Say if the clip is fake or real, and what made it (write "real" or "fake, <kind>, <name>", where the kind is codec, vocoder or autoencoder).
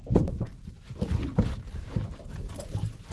fake, vocoder, BigVGAN v2